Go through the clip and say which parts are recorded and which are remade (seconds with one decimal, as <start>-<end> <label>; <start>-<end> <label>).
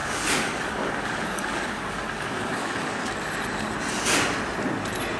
0.0-3.1 remade; 3.1-5.2 recorded